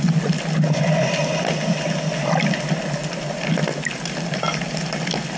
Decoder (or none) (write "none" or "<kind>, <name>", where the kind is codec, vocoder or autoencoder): none